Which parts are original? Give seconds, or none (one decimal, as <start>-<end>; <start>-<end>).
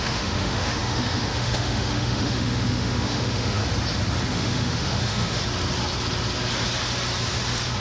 3.6-4.3; 5.4-7.8